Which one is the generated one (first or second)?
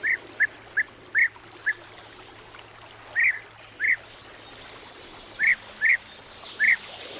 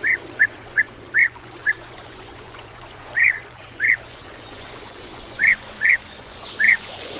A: second